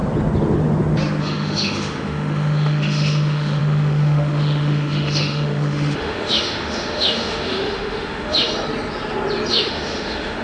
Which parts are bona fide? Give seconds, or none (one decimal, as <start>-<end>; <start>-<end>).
0.0-1.2; 8.5-9.5